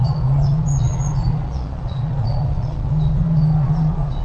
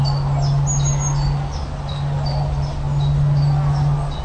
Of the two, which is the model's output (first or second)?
first